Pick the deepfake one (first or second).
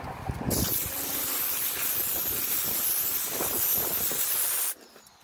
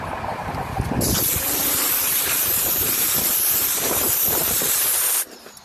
second